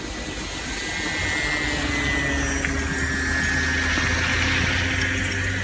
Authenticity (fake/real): real